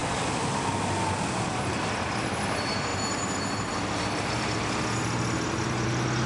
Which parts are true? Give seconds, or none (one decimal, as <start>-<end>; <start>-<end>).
0.0-6.3